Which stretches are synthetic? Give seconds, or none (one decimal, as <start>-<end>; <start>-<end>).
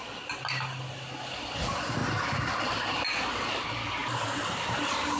4.0-5.2